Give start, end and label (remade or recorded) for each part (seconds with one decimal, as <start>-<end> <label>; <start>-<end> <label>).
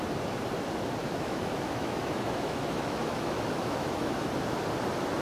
0.0-1.0 recorded; 1.0-4.1 remade; 4.1-5.2 recorded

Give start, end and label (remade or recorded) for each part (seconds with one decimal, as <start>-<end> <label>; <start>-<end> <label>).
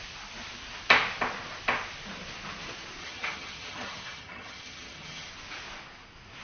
0.0-3.0 recorded; 3.0-5.3 remade; 5.3-6.4 recorded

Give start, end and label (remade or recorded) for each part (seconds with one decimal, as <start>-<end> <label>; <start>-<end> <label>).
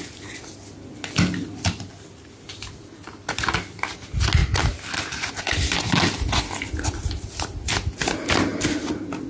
0.0-9.3 recorded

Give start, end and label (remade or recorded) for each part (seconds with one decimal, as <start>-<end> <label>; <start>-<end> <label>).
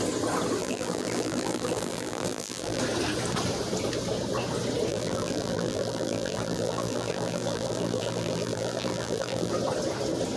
0.0-0.6 recorded; 0.6-2.8 remade; 2.8-4.9 recorded; 4.9-9.5 remade; 9.5-10.4 recorded